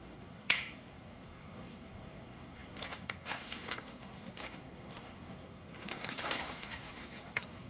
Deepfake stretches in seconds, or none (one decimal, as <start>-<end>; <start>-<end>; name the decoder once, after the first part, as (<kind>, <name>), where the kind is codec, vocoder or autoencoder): 0.0-7.7 (codec, SNAC)